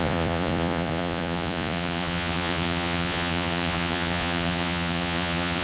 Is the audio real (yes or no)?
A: no